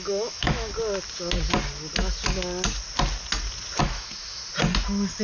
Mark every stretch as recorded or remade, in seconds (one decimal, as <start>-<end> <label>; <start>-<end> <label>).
0.0-0.7 remade; 0.7-3.8 recorded; 3.8-4.4 remade; 4.4-5.2 recorded

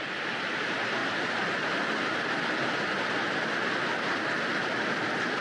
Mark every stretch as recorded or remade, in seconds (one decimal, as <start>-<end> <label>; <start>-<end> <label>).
0.0-1.0 recorded; 1.0-2.1 remade; 2.1-5.4 recorded

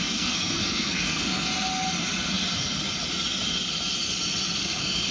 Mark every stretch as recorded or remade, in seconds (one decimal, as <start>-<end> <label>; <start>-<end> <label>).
0.0-1.5 remade; 1.5-4.6 recorded; 4.6-5.1 remade

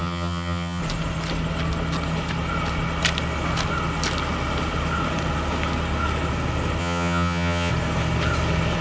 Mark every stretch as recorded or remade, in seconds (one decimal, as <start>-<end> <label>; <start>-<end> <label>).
0.0-0.8 remade; 0.8-6.8 recorded; 6.8-7.7 remade; 7.7-8.8 recorded